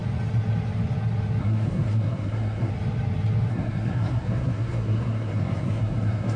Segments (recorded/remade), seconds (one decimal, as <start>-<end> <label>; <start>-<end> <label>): 0.0-1.4 recorded; 1.4-2.7 remade; 2.7-3.5 recorded; 3.5-6.4 remade